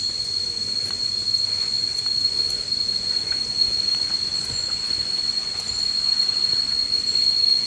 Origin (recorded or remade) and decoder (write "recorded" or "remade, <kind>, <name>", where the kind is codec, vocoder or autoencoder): remade, vocoder, Vocos